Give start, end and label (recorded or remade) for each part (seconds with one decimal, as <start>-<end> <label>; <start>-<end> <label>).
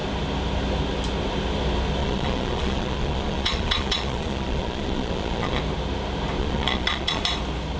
0.0-2.0 recorded; 2.0-5.6 remade; 5.6-6.4 recorded; 6.4-7.2 remade; 7.2-7.8 recorded